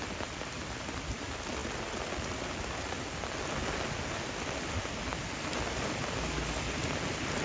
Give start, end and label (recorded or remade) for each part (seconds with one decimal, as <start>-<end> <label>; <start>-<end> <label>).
0.0-7.4 recorded